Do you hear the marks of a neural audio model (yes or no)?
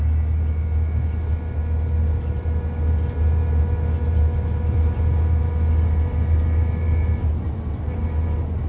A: no